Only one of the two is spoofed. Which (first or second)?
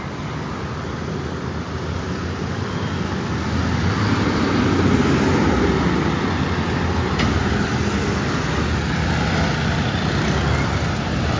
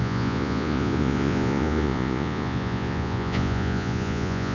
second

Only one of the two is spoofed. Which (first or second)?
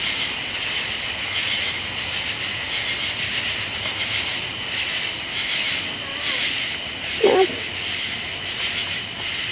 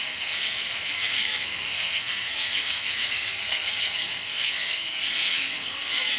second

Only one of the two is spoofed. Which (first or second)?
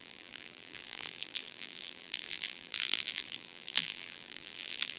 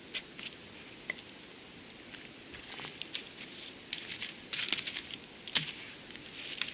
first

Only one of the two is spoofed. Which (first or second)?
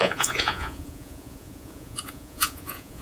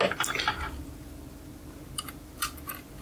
first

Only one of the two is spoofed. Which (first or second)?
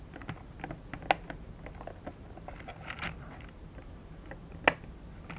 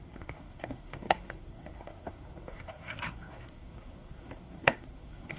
second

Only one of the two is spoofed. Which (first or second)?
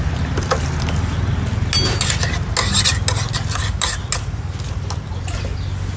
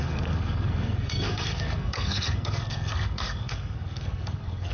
second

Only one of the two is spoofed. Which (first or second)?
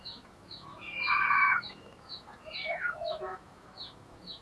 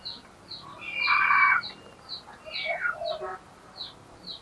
first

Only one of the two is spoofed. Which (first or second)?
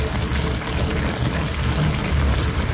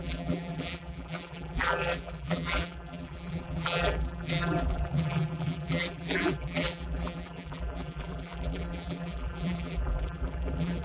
second